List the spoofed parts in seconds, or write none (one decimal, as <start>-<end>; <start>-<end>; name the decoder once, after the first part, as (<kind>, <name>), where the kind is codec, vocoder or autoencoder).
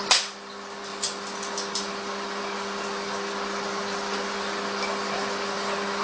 none